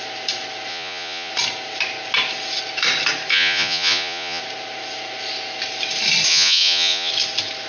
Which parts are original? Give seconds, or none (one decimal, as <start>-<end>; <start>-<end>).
0.0-0.7; 1.3-3.3; 4.4-6.3; 7.1-7.7